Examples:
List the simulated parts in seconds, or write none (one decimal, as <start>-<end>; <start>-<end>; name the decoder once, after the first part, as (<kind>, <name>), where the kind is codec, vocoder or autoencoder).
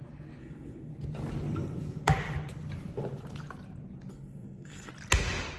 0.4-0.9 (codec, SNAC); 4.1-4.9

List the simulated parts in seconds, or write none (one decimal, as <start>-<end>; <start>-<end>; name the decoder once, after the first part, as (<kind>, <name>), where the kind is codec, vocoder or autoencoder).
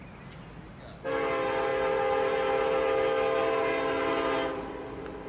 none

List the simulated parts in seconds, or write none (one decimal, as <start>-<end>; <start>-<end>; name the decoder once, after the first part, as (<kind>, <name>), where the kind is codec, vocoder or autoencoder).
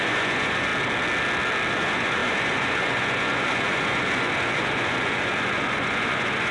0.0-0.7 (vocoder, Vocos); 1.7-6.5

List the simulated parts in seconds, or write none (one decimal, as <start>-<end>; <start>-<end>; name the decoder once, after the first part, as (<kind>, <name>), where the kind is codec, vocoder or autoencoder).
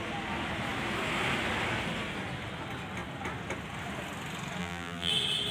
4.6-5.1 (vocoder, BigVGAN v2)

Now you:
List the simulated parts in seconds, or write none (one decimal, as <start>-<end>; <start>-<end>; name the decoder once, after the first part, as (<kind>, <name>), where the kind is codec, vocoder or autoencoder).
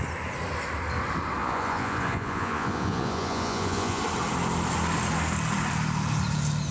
1.4-4.0 (vocoder, Vocos)